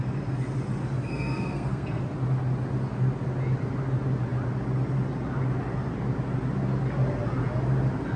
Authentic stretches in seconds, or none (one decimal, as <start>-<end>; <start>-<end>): 0.0-1.1; 2.0-8.2